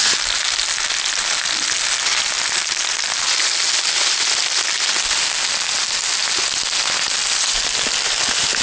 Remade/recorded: recorded